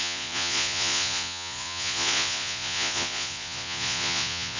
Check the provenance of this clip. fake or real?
fake